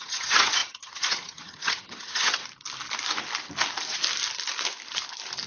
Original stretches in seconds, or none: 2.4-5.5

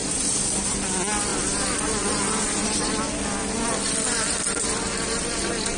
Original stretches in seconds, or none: 0.0-5.8

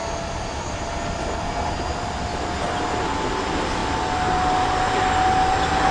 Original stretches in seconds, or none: 0.0-5.9

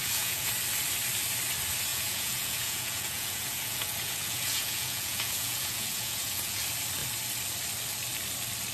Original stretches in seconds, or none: 0.5-1.9; 6.6-8.7

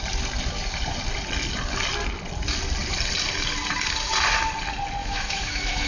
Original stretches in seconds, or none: 0.0-5.0